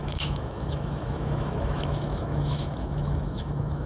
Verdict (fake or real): fake